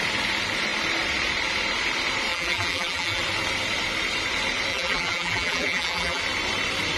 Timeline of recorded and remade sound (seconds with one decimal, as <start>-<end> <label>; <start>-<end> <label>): 0.0-2.3 recorded; 2.3-3.2 remade; 3.2-4.7 recorded; 4.7-6.2 remade; 6.2-7.0 recorded